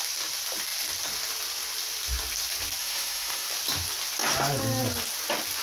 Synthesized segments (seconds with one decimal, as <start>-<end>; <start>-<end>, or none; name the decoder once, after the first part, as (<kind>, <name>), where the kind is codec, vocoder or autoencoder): 2.8-3.5 (autoencoder, DAC-VAE)